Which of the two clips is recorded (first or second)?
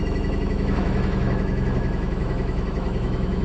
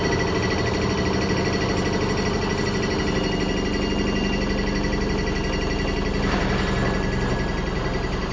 second